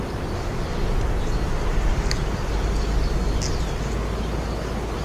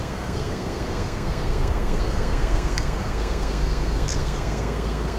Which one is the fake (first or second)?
second